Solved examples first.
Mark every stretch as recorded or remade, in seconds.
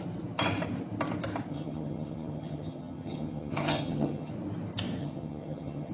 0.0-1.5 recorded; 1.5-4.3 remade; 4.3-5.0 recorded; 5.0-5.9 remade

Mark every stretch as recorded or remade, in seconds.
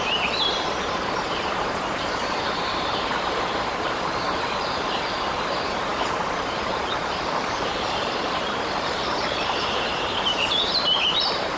0.0-11.6 remade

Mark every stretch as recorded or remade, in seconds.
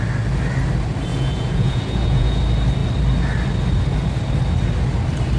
0.0-1.1 recorded; 1.1-2.4 remade; 2.4-5.4 recorded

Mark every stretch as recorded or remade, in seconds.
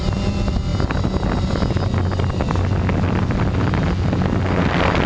0.0-5.1 recorded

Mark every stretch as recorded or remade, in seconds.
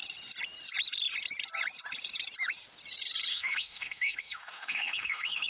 0.0-3.3 recorded; 3.3-5.5 remade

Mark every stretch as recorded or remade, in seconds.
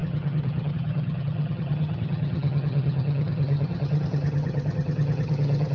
0.0-5.7 remade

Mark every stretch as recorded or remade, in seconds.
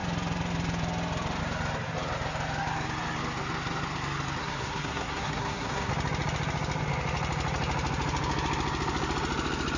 0.0-4.4 recorded; 4.4-5.9 remade; 5.9-9.8 recorded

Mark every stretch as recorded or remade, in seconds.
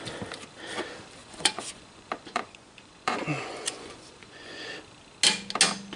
0.0-1.2 recorded; 1.2-4.7 remade; 4.7-6.0 recorded